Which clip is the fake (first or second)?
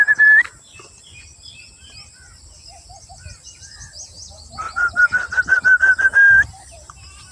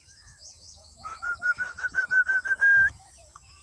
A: second